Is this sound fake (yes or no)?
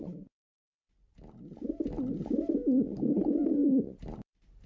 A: no